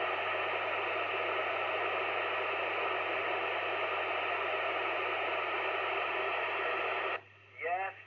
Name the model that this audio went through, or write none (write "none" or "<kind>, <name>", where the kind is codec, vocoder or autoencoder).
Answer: none